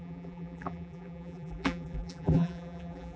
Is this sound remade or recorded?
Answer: remade